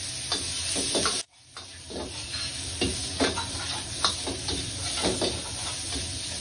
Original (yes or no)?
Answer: yes